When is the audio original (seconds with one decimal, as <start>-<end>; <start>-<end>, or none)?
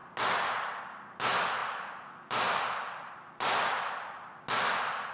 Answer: 0.0-1.6; 4.4-5.1